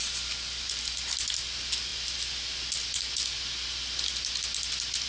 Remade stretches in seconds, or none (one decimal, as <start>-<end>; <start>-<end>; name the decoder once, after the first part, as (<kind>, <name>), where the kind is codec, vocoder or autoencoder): none